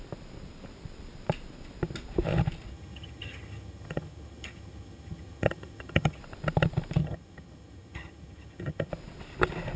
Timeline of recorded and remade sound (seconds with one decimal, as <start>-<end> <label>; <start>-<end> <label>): 0.0-2.7 recorded; 2.7-6.2 remade; 6.2-7.0 recorded; 7.0-8.9 remade; 8.9-9.8 recorded